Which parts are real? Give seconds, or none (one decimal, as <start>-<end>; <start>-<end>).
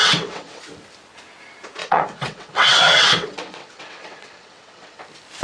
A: 0.6-1.8; 5.0-5.4